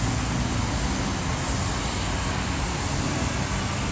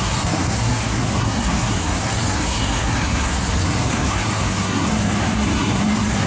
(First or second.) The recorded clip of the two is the first